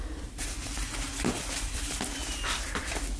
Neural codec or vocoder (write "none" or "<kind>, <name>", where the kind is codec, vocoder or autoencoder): vocoder, BigVGAN v2